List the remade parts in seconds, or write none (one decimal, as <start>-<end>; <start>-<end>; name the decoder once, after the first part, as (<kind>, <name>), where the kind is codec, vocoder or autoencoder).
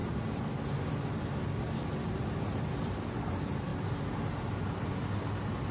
none